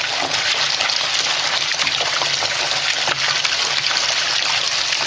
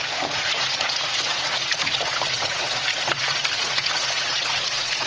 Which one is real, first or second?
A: first